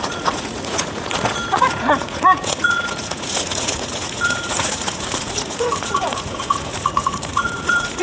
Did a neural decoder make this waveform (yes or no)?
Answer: yes